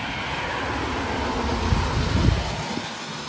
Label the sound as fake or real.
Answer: real